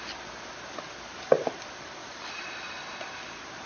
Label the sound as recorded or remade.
recorded